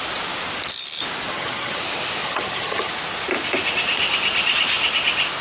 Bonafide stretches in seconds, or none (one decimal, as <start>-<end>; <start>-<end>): 0.0-1.3; 1.8-2.2; 2.9-5.4